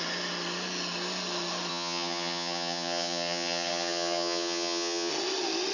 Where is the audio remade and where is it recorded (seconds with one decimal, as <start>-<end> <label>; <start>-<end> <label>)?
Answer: 0.0-1.7 recorded; 1.7-5.1 remade; 5.1-5.7 recorded